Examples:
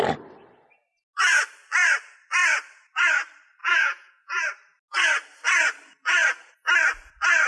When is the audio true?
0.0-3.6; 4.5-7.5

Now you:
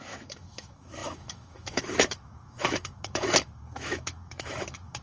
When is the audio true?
none

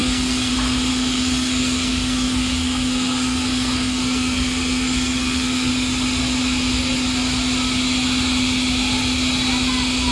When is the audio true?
0.5-0.9; 5.7-10.1

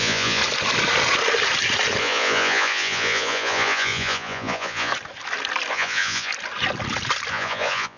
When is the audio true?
0.4-2.0; 4.9-5.7; 6.3-7.3

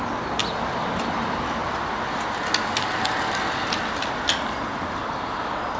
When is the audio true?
0.0-5.8

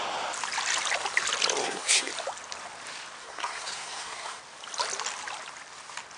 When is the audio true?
0.0-1.6; 2.1-3.2; 4.4-6.2

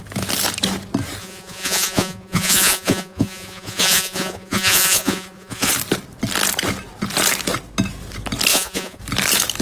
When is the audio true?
0.0-1.2; 5.7-8.5; 9.0-9.6

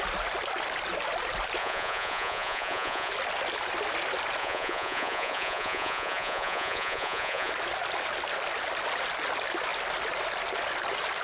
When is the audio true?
0.0-1.6; 3.1-4.4; 7.5-11.2